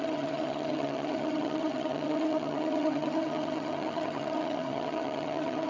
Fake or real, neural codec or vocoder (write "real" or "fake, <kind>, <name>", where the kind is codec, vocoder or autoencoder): fake, vocoder, HiFi-GAN